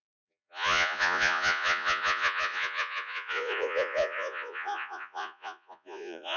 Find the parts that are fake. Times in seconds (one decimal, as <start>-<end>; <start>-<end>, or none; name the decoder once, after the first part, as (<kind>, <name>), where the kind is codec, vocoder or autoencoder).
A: 0.0-6.4 (vocoder, Vocos)